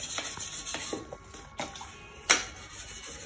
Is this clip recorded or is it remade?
recorded